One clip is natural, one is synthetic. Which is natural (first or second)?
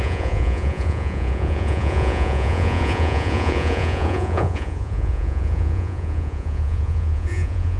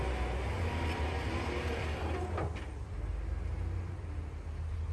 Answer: second